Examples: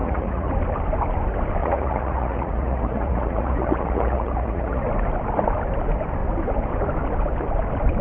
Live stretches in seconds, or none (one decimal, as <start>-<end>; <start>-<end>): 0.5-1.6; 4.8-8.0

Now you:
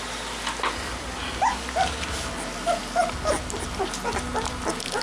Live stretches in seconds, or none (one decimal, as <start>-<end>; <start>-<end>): 0.0-5.0

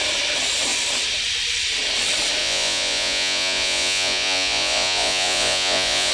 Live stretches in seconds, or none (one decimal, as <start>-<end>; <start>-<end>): 0.0-2.4

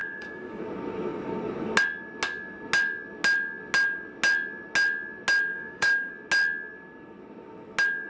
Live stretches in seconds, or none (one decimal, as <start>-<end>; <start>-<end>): 0.6-5.5; 6.1-8.1